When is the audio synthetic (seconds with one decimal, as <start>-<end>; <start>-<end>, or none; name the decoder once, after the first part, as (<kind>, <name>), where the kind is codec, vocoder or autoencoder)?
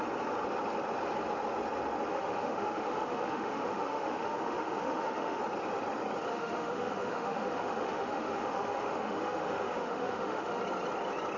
2.1-5.4 (autoencoder, DAC-VAE); 6.3-10.6